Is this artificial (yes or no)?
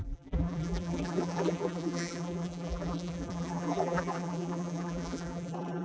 yes